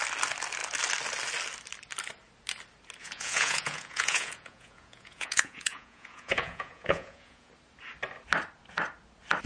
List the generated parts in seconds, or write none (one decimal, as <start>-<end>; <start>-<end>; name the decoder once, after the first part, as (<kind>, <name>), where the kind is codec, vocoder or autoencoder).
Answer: 3.0-7.5 (vocoder, Vocos)